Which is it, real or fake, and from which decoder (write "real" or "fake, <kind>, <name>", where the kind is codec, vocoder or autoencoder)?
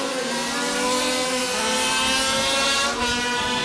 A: real